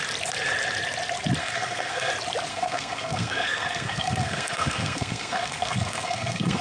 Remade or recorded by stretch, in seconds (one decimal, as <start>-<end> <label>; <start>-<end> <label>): 0.0-1.4 recorded; 1.4-2.1 remade; 2.1-2.5 recorded; 2.5-6.6 remade